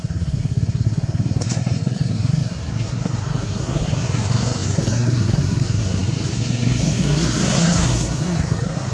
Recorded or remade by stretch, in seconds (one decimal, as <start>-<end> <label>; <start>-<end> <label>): 0.0-8.9 remade